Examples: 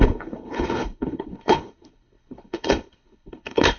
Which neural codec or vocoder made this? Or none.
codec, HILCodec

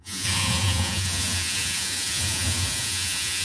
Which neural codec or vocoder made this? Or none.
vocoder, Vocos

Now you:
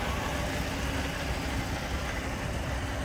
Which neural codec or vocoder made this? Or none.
none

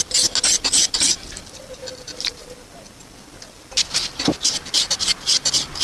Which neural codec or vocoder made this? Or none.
none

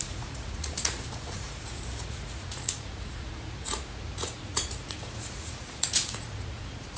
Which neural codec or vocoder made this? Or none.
vocoder, Vocos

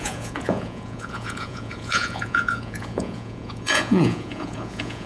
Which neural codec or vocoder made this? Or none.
vocoder, Vocos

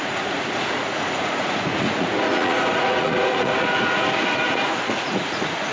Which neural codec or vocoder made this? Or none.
vocoder, Vocos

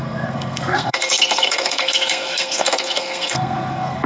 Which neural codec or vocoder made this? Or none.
codec, SNAC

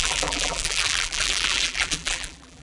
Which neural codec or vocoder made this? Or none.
vocoder, BigVGAN v2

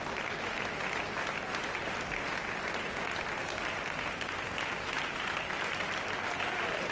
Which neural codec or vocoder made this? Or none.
none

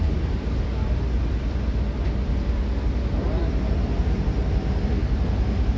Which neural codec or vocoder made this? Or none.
none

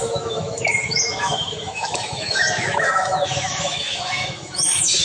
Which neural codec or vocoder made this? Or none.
autoencoder, DAC-VAE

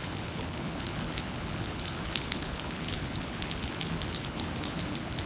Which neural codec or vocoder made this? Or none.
codec, HILCodec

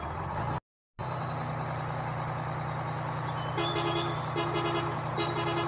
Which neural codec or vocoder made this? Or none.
none